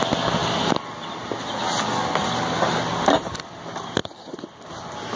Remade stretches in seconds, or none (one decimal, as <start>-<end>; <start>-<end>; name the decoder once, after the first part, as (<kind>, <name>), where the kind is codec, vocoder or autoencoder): 0.4-3.5 (vocoder, BigVGAN v2); 4.0-4.7

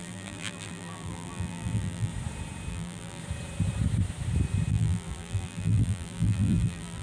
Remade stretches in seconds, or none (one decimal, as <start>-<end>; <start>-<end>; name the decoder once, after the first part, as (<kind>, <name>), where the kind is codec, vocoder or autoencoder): 0.0-2.1 (vocoder, BigVGAN v2); 2.7-3.2; 4.7-7.0

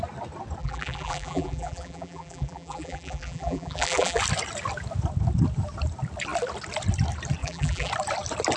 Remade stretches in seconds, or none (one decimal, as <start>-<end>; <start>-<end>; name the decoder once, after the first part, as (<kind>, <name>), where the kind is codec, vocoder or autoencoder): 0.6-4.2 (vocoder, BigVGAN v2); 7.4-7.9

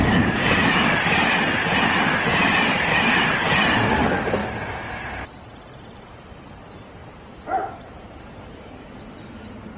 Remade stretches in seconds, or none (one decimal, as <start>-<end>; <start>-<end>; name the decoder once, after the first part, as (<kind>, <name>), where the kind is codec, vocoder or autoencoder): 2.3-2.9 (vocoder, BigVGAN v2); 7.0-9.4